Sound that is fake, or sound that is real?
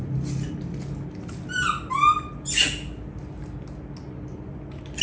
real